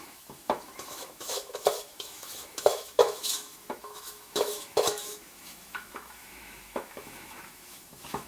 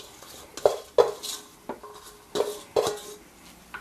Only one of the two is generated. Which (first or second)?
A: first